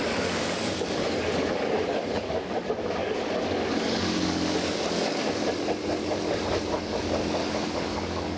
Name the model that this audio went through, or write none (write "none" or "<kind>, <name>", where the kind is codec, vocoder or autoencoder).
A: codec, DAC